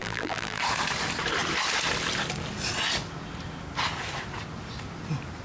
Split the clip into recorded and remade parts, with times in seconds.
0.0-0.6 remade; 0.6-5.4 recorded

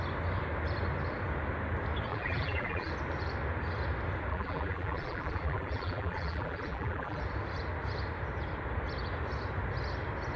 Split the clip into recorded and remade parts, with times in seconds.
0.0-2.1 recorded; 2.1-2.9 remade; 2.9-4.3 recorded; 4.3-7.2 remade; 7.2-10.4 recorded

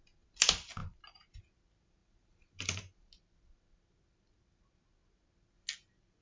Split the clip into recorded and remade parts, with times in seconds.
0.0-0.8 recorded; 0.8-1.4 remade; 1.4-2.0 recorded; 2.0-3.2 remade; 3.2-6.2 recorded

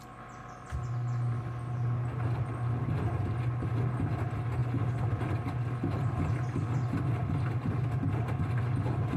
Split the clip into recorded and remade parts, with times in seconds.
0.0-9.2 recorded

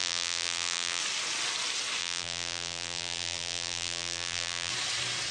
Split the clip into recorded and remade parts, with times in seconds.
0.0-1.0 remade; 1.0-2.0 recorded; 2.0-4.7 remade; 4.7-5.3 recorded

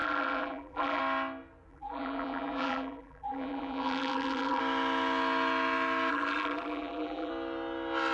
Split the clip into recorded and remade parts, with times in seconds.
0.0-1.0 remade; 1.0-1.7 recorded; 1.7-4.6 remade; 4.6-6.1 recorded; 6.1-7.3 remade; 7.3-8.1 recorded

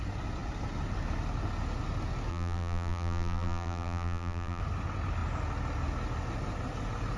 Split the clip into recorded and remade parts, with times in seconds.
0.0-2.3 recorded; 2.3-4.6 remade; 4.6-7.2 recorded

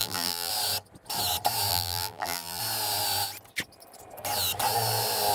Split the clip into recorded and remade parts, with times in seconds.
0.0-0.5 remade; 0.5-1.7 recorded; 1.7-2.6 remade; 2.6-5.3 recorded